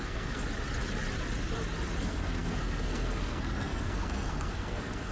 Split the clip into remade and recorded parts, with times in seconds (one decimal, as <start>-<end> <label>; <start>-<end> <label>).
0.0-0.4 remade; 0.4-2.0 recorded; 2.0-5.1 remade